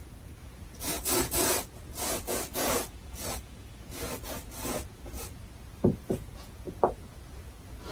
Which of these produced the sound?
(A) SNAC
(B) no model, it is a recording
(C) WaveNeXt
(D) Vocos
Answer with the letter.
D